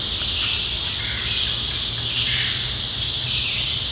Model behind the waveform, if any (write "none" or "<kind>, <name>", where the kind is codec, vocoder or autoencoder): none